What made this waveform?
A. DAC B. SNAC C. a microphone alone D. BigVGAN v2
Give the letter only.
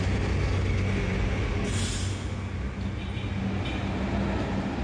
C